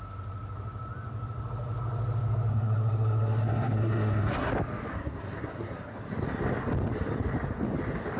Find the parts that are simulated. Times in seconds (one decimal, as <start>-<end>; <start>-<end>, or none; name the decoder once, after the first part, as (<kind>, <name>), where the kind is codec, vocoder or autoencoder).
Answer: 2.5-4.5 (codec, SNAC); 4.9-5.9